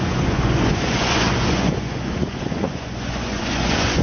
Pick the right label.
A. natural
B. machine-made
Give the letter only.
B